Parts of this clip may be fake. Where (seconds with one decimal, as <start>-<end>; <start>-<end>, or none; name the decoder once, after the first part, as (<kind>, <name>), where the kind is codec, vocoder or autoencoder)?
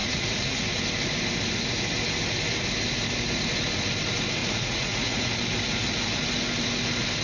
0.0-0.8 (vocoder, Vocos); 4.4-5.3